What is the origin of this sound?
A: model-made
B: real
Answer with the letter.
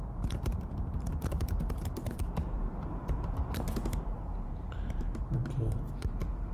A